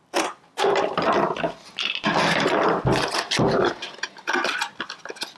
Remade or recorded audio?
recorded